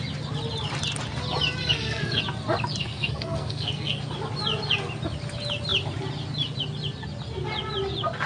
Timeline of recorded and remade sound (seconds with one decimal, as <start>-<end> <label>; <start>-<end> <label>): 0.0-1.6 recorded; 1.6-2.2 remade; 2.2-2.8 recorded; 2.8-4.0 remade; 4.0-8.3 recorded